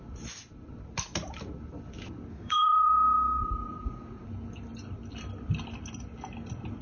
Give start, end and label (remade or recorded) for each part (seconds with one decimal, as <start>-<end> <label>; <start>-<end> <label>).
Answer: 0.0-2.3 recorded; 2.3-3.4 remade; 3.4-6.8 recorded

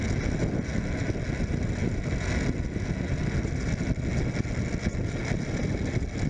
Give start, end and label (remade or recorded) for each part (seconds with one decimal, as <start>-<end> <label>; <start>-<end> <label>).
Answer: 0.0-6.3 recorded